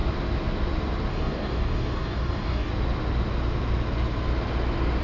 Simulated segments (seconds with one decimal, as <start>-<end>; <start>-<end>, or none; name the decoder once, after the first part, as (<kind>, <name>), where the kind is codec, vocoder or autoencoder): 1.1-2.7 (codec, DAC)